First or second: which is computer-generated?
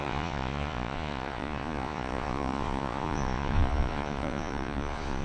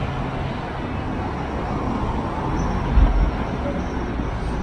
first